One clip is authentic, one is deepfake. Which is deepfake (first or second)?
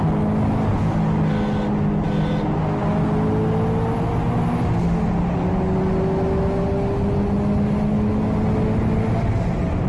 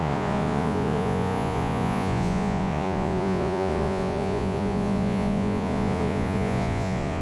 second